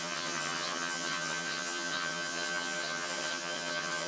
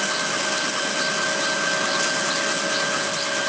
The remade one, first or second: first